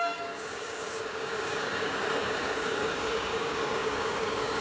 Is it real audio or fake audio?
fake